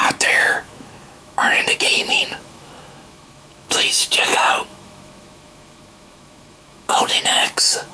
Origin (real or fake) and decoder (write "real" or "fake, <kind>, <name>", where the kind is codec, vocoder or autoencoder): fake, autoencoder, DAC-VAE